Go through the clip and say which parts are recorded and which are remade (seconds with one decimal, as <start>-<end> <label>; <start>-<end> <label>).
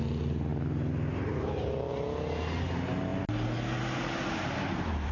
0.0-0.5 recorded; 0.5-1.9 remade; 1.9-5.1 recorded